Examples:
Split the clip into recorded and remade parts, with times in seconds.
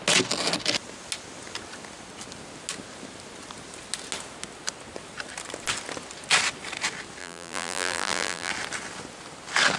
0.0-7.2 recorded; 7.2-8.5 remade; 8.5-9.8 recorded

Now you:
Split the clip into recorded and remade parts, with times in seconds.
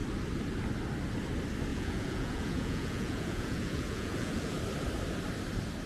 0.0-1.7 recorded; 1.7-4.5 remade; 4.5-5.9 recorded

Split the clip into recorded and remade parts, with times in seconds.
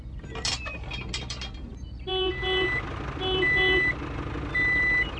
0.0-5.2 recorded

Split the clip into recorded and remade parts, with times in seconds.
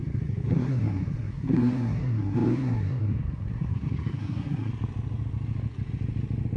0.0-4.7 remade; 4.7-6.6 recorded